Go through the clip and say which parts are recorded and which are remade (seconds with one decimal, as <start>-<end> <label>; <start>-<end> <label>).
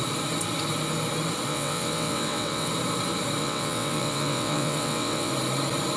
0.0-1.5 recorded; 1.5-2.7 remade; 2.7-3.4 recorded; 3.4-5.3 remade; 5.3-6.0 recorded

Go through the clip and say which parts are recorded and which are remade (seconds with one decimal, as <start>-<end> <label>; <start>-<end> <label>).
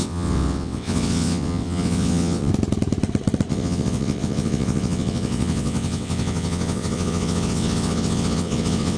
0.0-2.5 remade; 2.5-3.5 recorded; 3.5-9.0 remade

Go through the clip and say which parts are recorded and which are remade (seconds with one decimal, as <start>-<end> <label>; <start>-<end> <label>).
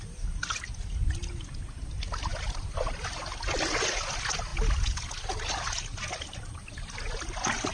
0.0-7.7 recorded